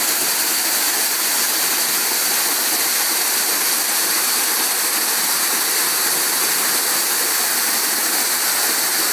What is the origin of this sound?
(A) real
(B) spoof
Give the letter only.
A